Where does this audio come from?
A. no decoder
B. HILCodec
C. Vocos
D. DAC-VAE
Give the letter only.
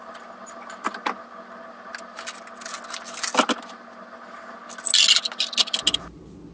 A